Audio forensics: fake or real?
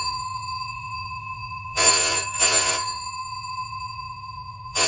fake